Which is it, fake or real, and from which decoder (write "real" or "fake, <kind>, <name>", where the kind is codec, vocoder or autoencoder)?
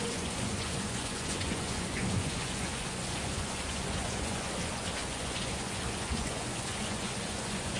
fake, vocoder, Vocos